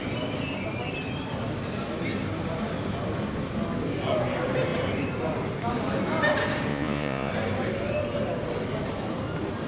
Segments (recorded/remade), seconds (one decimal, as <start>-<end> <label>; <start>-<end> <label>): 0.0-6.7 recorded; 6.7-7.3 remade; 7.3-9.7 recorded